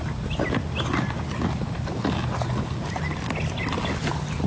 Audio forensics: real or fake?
real